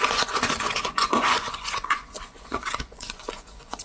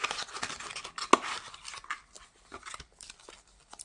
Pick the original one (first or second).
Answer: second